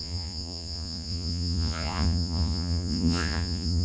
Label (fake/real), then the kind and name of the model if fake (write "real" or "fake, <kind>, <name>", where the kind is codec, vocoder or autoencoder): fake, vocoder, Vocos